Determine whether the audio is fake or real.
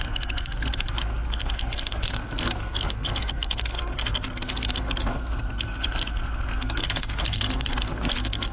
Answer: fake